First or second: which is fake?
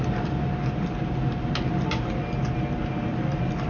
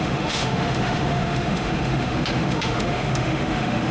second